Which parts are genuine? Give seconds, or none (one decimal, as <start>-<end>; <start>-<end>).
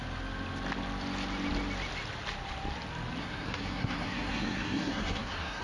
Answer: 0.0-3.2